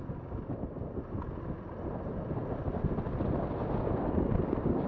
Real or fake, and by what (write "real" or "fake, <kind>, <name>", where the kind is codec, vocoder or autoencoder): real